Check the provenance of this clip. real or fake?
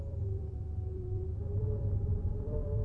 fake